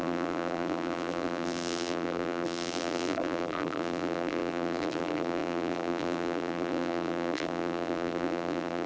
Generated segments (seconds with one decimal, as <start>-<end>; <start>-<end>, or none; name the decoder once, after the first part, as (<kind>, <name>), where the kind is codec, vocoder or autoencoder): 0.0-8.9 (vocoder, BigVGAN v2)